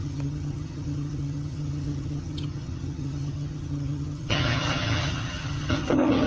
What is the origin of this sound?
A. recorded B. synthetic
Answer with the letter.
B